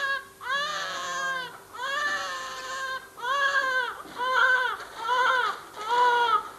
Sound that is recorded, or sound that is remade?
recorded